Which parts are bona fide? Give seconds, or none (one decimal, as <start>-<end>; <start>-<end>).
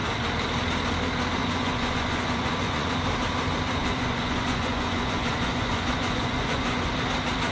0.0-1.4; 2.9-3.8; 6.9-7.5